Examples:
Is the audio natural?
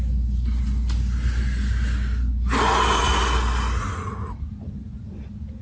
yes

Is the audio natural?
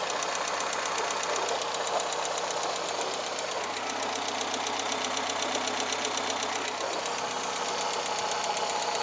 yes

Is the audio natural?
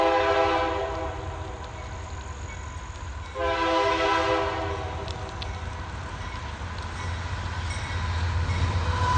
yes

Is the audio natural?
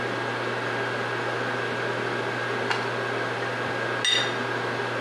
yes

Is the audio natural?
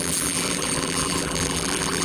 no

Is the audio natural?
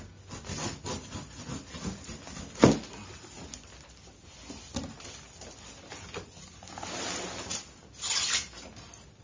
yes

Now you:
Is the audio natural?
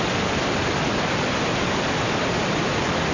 yes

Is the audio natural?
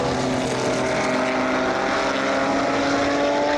yes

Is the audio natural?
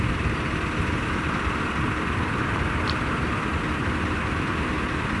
yes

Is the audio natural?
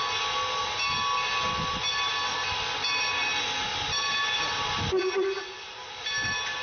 yes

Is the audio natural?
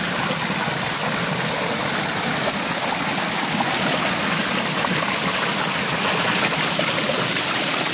yes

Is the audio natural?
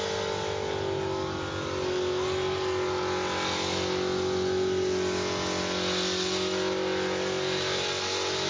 yes